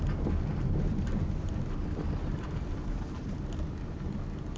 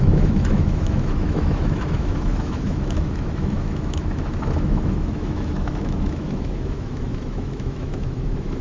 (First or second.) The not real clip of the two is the second